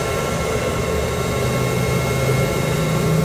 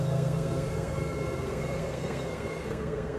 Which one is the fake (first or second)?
second